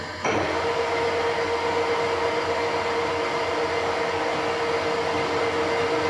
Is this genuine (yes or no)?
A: yes